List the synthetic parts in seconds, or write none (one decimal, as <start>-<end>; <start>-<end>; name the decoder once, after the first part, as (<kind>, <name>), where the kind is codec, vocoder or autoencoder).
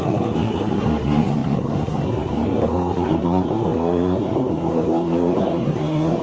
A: 0.0-6.2 (codec, SNAC)